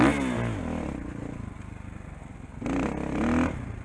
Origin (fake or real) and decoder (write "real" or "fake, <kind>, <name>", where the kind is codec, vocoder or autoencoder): real